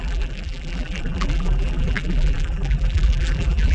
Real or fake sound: fake